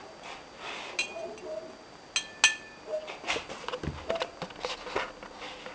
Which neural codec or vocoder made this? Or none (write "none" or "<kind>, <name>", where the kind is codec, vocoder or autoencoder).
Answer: none